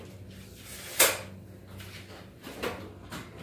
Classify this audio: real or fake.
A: real